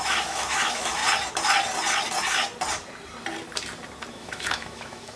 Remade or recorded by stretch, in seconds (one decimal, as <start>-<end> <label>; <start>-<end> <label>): 0.0-1.0 remade; 1.0-4.1 recorded; 4.1-5.2 remade